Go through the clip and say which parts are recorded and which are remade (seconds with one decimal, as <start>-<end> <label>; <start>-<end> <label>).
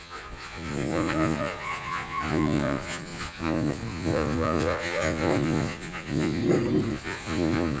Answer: 0.0-6.4 remade; 6.4-6.9 recorded; 6.9-7.8 remade